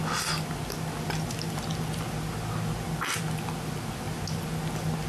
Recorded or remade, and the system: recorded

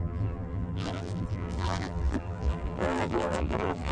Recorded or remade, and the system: remade, vocoder, BigVGAN v2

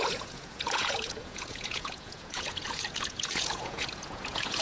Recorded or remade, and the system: remade, vocoder, Vocos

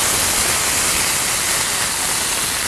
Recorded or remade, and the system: recorded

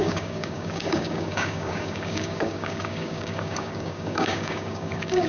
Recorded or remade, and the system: remade, codec, DAC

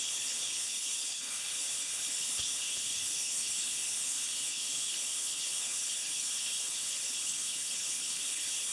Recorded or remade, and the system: remade, codec, HILCodec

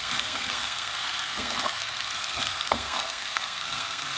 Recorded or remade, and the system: remade, codec, SNAC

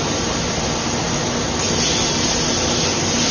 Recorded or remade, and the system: recorded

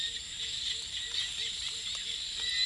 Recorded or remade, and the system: remade, vocoder, BigVGAN v2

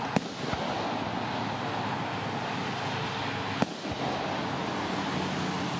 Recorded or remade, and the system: recorded